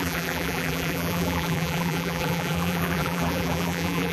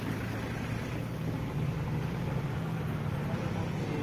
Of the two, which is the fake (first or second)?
first